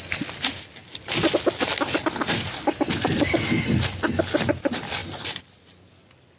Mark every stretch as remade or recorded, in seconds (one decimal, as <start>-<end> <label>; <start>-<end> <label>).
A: 0.0-6.4 recorded